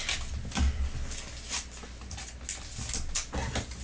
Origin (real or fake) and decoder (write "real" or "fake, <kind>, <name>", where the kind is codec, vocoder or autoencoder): real